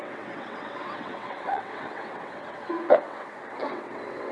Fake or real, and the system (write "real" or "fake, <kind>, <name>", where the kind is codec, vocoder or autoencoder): fake, vocoder, WaveNeXt